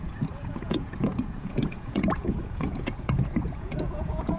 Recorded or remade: remade